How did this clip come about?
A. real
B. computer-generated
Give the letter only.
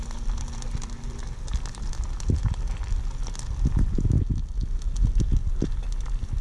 A